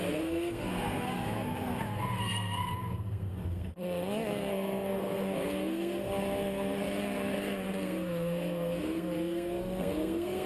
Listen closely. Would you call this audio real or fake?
fake